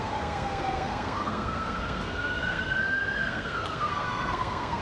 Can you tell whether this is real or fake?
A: fake